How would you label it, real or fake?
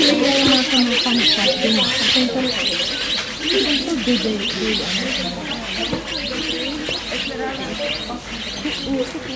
real